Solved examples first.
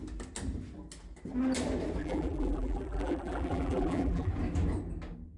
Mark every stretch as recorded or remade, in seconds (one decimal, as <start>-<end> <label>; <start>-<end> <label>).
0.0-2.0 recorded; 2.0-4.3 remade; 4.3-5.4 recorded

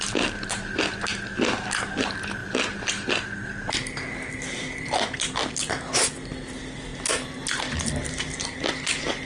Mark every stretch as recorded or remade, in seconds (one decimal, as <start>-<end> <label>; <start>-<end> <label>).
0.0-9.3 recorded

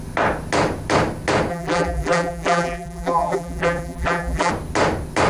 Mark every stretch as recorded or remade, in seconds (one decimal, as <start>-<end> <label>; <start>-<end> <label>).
0.0-1.5 recorded; 1.5-4.5 remade; 4.5-5.3 recorded

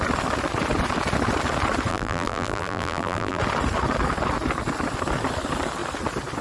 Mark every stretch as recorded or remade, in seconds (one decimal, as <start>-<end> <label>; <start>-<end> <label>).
0.0-1.9 recorded; 1.9-3.4 remade; 3.4-6.4 recorded

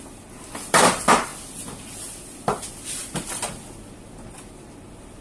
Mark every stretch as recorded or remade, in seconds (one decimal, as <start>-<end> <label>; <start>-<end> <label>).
0.0-1.3 remade; 1.3-1.9 recorded; 1.9-5.2 remade

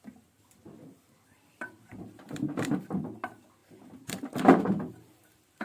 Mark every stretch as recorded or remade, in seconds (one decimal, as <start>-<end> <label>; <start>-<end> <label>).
0.0-3.6 remade; 3.6-4.9 recorded; 4.9-5.6 remade

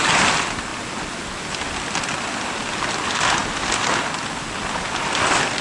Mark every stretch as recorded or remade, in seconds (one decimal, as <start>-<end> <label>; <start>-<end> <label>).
0.0-5.6 recorded

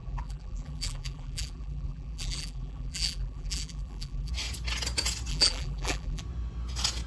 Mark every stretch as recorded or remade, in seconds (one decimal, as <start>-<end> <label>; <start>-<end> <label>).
0.0-4.3 remade; 4.3-5.3 recorded; 5.3-6.2 remade; 6.2-7.1 recorded